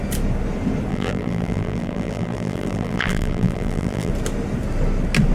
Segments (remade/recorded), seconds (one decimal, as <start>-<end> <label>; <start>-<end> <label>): 0.0-0.9 recorded; 0.9-4.1 remade; 4.1-5.3 recorded

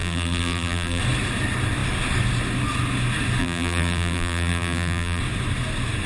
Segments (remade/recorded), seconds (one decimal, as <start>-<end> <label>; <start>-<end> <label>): 0.0-1.0 remade; 1.0-3.4 recorded; 3.4-5.2 remade; 5.2-6.1 recorded

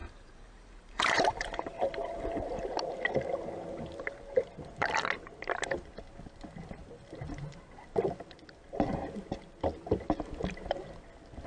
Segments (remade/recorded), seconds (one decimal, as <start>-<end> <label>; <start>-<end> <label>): 0.0-2.5 remade; 2.5-11.5 recorded

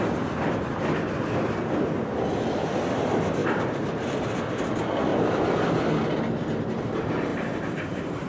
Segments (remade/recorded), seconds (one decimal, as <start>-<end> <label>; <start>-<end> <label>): 0.0-5.1 recorded; 5.1-5.8 remade; 5.8-7.3 recorded; 7.3-8.3 remade

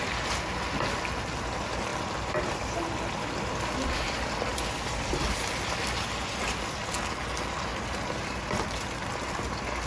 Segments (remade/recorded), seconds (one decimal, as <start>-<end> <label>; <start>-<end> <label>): 0.0-9.9 recorded

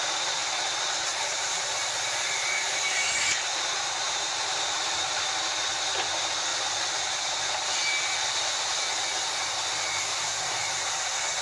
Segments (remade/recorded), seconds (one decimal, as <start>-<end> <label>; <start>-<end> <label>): 0.0-0.4 recorded; 0.4-5.4 remade; 5.4-6.5 recorded; 6.5-8.9 remade; 8.9-10.1 recorded; 10.1-10.7 remade; 10.7-11.4 recorded

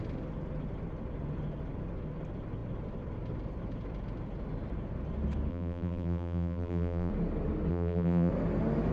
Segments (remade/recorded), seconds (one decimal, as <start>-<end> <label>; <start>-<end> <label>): 0.0-5.5 recorded; 5.5-7.1 remade; 7.1-7.7 recorded; 7.7-8.3 remade; 8.3-8.9 recorded